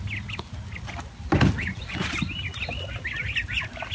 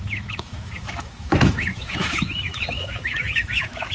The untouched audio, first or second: first